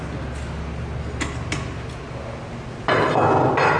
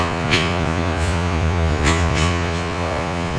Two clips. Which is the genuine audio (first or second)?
first